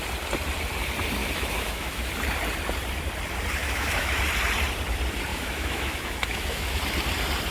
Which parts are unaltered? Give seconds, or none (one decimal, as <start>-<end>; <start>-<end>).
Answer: 0.0-1.2; 2.1-3.6; 4.2-5.3; 6.8-7.5